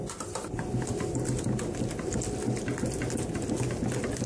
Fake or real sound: real